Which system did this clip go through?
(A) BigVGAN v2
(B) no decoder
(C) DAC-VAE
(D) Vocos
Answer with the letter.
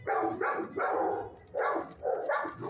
B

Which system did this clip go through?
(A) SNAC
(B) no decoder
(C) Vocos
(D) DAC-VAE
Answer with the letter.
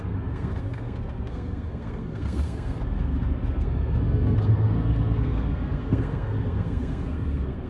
A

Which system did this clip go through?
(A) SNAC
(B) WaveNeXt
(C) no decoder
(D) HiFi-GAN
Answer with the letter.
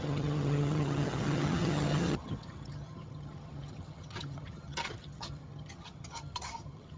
D